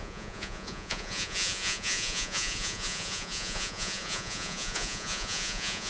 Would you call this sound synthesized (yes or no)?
yes